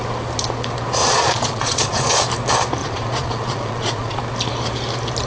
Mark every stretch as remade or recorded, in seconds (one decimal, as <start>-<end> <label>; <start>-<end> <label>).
0.0-1.0 recorded; 1.0-2.2 remade; 2.2-2.8 recorded; 2.8-4.2 remade; 4.2-5.3 recorded

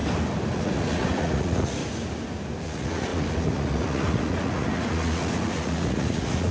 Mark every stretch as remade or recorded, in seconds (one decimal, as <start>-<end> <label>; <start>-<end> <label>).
0.0-0.5 recorded; 0.5-1.8 remade; 1.8-2.6 recorded; 2.6-6.5 remade

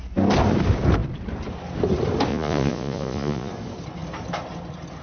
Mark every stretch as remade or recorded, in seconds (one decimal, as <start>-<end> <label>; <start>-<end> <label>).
0.0-2.3 recorded; 2.3-3.5 remade; 3.5-5.0 recorded

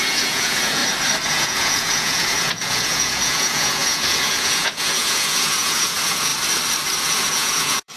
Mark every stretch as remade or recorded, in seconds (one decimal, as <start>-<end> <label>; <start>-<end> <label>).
0.0-0.8 remade; 0.8-1.3 recorded; 1.3-6.3 remade; 6.3-7.0 recorded; 7.0-8.0 remade

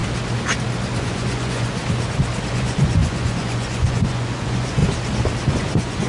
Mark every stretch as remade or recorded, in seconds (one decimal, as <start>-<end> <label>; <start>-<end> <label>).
0.0-1.0 recorded; 1.0-1.8 remade; 1.8-2.5 recorded; 2.5-4.8 remade; 4.8-5.5 recorded; 5.5-6.1 remade

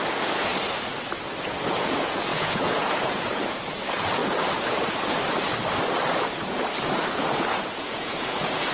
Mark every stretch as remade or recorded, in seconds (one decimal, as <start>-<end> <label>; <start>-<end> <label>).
0.0-0.5 remade; 0.5-1.5 recorded; 1.5-4.2 remade; 4.2-6.9 recorded; 6.9-8.7 remade